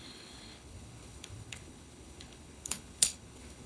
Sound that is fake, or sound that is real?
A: fake